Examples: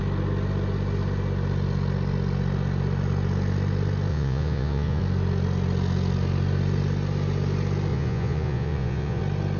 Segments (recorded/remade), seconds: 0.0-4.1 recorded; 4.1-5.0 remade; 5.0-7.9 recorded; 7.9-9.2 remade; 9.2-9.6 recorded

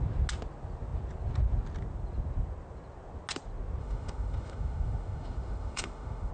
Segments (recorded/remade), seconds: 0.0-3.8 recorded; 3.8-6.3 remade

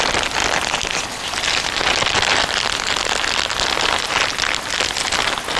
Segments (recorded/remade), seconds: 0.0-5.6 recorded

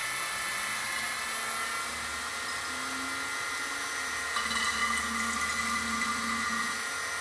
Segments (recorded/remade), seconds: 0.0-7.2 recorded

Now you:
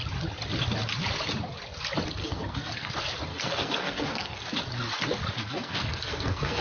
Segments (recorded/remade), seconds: 0.0-2.2 recorded; 2.2-2.9 remade; 2.9-3.3 recorded; 3.3-4.4 remade; 4.4-5.4 recorded; 5.4-6.6 remade